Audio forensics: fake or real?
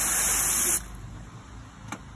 real